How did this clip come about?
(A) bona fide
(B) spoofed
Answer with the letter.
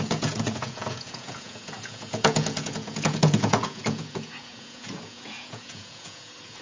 B